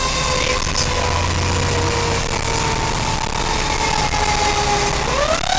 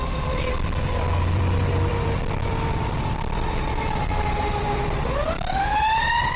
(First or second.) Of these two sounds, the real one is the first